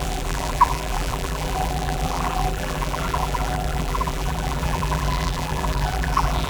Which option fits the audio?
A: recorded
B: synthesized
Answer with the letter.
B